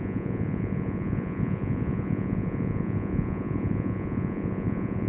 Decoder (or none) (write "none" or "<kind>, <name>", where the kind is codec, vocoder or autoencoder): vocoder, Vocos